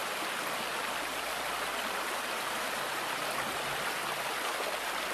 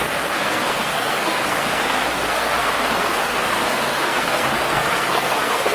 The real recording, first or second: first